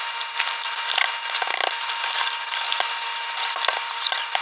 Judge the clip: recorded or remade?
recorded